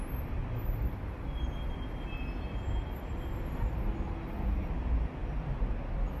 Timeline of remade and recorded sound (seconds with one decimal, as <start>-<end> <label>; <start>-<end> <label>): 0.0-0.4 recorded; 0.4-3.3 remade; 3.3-6.2 recorded